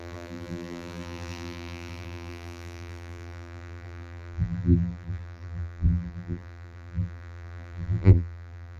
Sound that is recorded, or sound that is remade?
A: remade